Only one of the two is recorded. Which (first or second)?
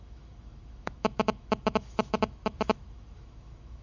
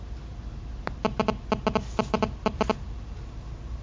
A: second